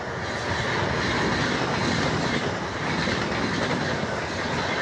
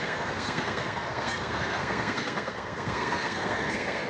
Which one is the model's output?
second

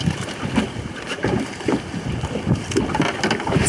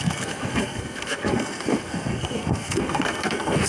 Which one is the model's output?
second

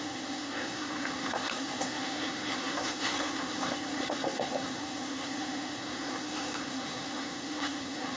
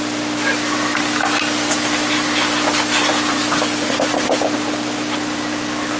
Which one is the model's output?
first